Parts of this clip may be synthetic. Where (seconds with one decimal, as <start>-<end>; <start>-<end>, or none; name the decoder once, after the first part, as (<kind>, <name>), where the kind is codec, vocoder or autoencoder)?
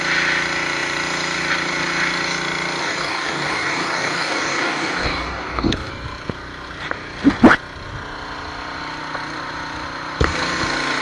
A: 2.8-5.9 (codec, DAC)